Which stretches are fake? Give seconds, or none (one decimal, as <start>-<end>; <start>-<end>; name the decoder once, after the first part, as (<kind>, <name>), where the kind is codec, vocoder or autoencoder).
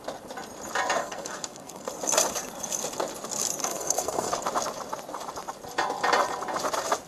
1.0-1.9 (codec, SNAC); 3.6-4.3